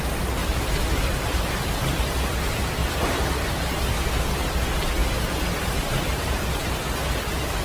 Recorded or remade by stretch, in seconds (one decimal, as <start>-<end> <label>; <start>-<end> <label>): 0.0-0.4 recorded; 0.4-1.6 remade; 1.6-2.8 recorded; 2.8-3.4 remade; 3.4-5.0 recorded; 5.0-6.6 remade; 6.6-7.6 recorded